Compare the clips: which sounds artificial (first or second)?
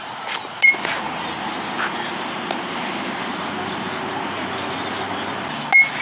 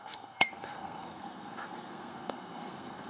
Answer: second